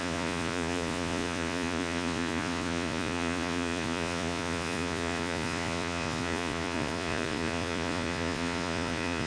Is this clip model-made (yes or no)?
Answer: yes